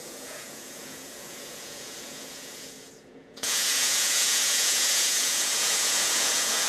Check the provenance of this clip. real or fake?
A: fake